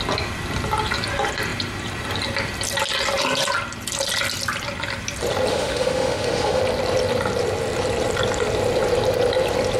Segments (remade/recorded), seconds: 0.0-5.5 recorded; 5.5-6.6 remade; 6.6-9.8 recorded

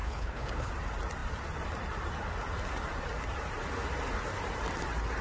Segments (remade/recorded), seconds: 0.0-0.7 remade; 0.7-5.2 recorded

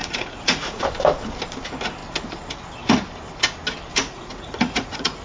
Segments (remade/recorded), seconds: 0.0-0.8 remade; 0.8-4.0 recorded; 4.0-5.2 remade

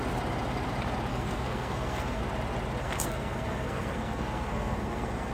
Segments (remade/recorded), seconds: 0.0-1.1 recorded; 1.1-2.2 remade; 2.2-2.8 recorded; 2.8-5.3 remade

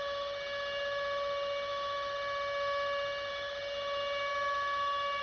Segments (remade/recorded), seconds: 0.0-5.2 recorded

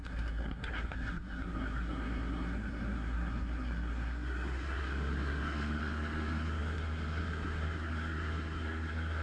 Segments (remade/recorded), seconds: 0.0-9.2 remade

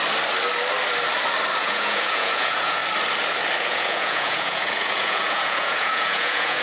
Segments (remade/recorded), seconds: 0.0-1.6 recorded; 1.6-2.8 remade; 2.8-3.6 recorded; 3.6-6.6 remade

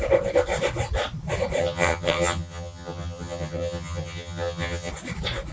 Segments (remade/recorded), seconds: 0.0-1.6 recorded; 1.6-4.9 remade; 4.9-5.5 recorded